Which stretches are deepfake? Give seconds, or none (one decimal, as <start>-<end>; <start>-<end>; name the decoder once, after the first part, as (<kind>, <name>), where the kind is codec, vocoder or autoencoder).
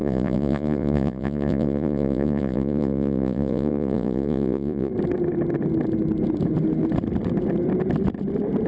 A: 0.0-4.9 (vocoder, Vocos)